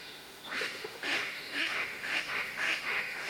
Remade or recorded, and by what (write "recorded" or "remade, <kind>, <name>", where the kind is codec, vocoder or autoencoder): remade, autoencoder, DAC-VAE